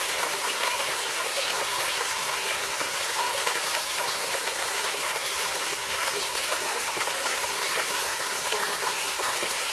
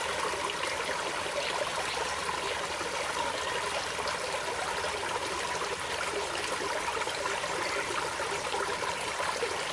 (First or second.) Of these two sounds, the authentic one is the second